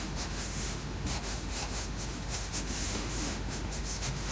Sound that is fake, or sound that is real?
fake